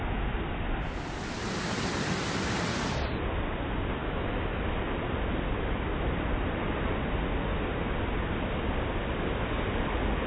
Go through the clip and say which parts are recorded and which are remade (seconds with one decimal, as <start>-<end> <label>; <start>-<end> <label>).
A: 0.0-4.0 recorded; 4.0-4.6 remade; 4.6-10.3 recorded